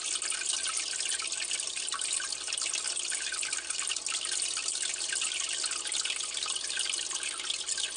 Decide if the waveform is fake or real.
real